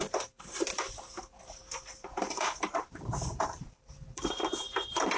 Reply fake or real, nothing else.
fake